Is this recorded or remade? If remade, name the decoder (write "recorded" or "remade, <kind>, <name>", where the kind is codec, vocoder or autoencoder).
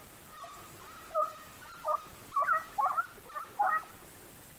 recorded